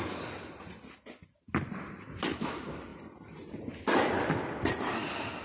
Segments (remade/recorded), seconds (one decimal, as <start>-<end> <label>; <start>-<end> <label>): 0.0-5.4 recorded